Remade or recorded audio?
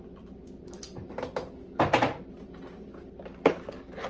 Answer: recorded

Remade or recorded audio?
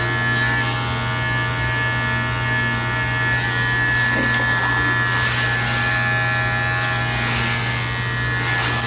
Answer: recorded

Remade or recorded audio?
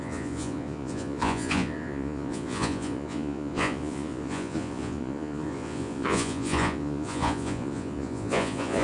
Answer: remade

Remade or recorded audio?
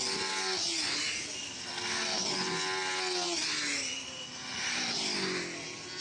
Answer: recorded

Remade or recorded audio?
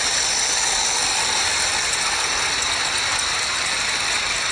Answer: recorded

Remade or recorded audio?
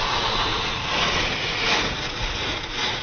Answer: remade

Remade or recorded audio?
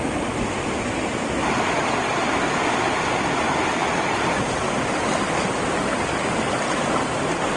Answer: recorded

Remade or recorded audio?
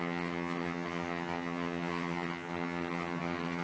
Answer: remade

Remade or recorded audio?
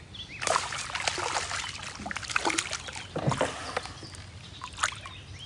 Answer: recorded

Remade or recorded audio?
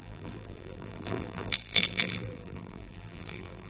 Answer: remade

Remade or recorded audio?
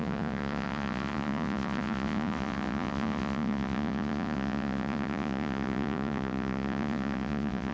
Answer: remade